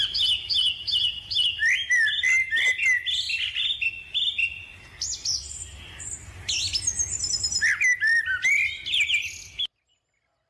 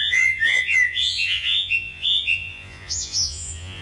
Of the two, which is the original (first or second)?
first